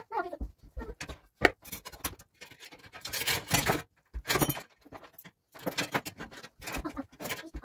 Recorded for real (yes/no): yes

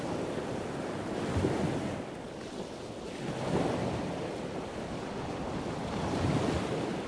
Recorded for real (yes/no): yes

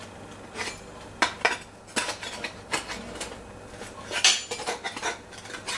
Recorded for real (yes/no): yes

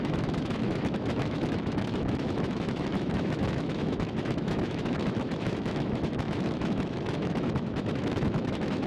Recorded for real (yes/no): no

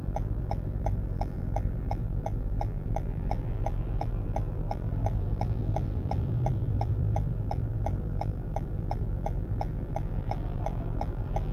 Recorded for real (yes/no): no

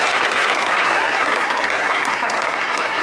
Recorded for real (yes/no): no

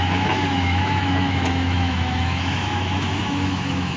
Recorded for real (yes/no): no